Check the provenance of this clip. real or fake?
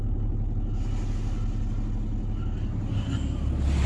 real